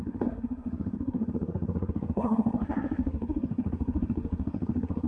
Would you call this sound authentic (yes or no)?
no